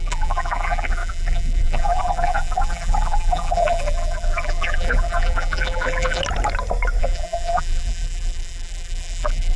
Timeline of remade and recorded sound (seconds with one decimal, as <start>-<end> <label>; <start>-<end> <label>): 0.0-6.2 remade; 6.2-7.0 recorded; 7.0-9.6 remade